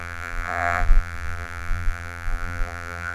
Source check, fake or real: fake